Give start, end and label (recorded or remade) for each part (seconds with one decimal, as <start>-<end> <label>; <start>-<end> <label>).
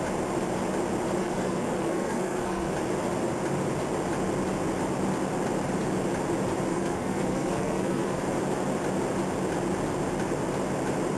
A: 0.0-1.2 recorded; 1.2-2.7 remade; 2.7-6.7 recorded; 6.7-8.2 remade; 8.2-11.2 recorded